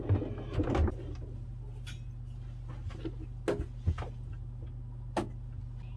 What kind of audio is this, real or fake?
real